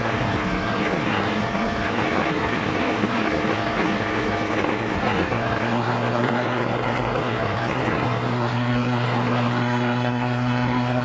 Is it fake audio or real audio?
fake